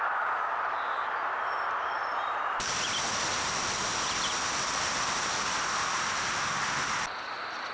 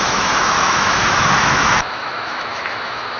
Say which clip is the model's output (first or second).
second